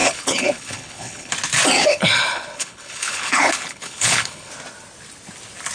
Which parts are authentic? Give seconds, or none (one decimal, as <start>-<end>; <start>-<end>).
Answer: 1.3-1.9; 4.5-5.7